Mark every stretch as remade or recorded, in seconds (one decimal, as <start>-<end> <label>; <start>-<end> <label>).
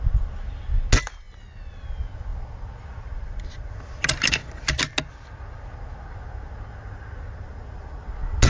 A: 0.0-8.5 recorded